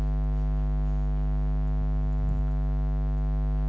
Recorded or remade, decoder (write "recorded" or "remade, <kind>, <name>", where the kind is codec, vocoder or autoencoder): recorded